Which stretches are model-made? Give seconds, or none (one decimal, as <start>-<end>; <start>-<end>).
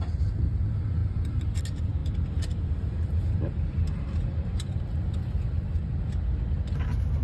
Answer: 2.0-4.8